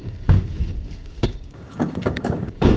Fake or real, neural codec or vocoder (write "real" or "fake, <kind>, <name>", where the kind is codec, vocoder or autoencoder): fake, codec, DAC